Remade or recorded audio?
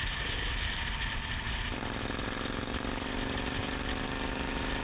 recorded